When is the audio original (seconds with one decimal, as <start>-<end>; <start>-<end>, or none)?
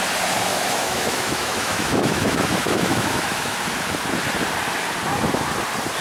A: 0.0-0.5; 3.6-6.0